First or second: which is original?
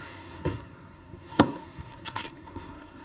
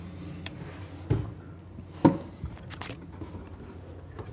second